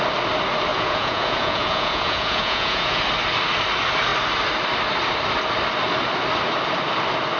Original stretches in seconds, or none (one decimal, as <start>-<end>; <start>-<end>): 0.0-0.7; 3.0-7.4